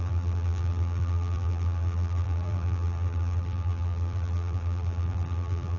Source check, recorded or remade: remade